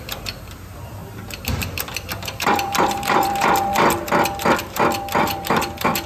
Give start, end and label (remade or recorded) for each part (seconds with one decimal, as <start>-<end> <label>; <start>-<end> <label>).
0.0-1.0 remade; 1.0-2.1 recorded; 2.1-3.7 remade; 3.7-5.2 recorded; 5.2-6.1 remade